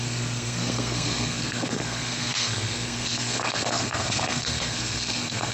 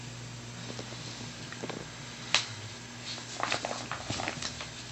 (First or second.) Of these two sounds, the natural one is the second